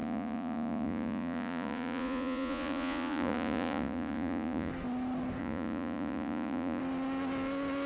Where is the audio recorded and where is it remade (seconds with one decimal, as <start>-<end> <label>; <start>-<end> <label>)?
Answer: 0.0-4.7 remade; 4.7-5.4 recorded; 5.4-6.8 remade; 6.8-7.9 recorded